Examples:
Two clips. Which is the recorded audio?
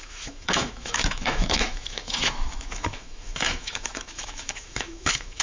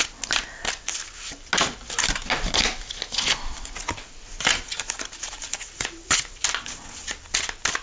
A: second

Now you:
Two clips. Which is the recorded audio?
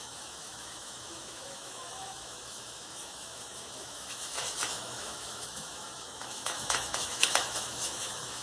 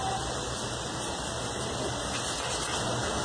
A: second